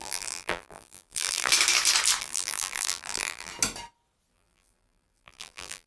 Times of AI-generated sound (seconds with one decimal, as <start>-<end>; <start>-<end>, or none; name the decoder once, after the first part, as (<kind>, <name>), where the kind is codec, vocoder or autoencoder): 0.0-1.5 (vocoder, BigVGAN v2); 2.2-3.5; 4.3-5.9